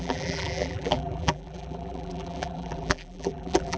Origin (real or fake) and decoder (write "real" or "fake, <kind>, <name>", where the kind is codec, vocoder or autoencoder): fake, vocoder, BigVGAN v2